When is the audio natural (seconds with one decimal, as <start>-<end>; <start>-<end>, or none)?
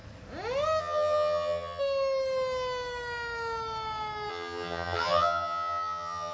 0.0-0.8; 1.8-4.3